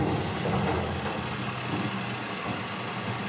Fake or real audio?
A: real